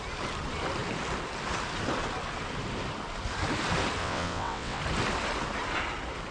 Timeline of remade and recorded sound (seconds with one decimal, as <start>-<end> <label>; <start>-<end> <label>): 0.0-4.0 recorded; 4.0-4.8 remade; 4.8-6.3 recorded